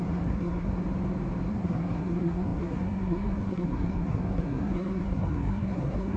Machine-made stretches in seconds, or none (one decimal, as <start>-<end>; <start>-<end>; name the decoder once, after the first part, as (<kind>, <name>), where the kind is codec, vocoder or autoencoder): 0.0-0.8 (codec, SNAC); 1.5-6.2